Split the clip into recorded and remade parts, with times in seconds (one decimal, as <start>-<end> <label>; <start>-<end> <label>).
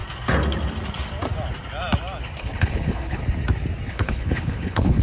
0.0-2.4 recorded; 2.4-3.2 remade; 3.2-3.9 recorded; 3.9-5.0 remade